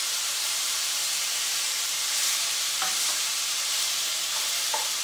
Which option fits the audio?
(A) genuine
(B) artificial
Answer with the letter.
B